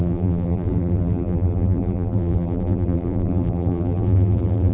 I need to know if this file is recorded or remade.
remade